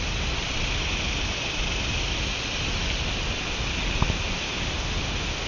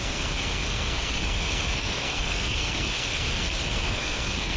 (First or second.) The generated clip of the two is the second